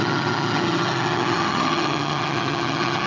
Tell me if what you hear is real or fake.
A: fake